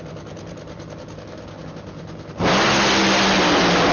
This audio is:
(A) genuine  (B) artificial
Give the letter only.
A